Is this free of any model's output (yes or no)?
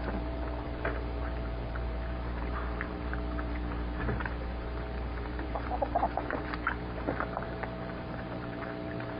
no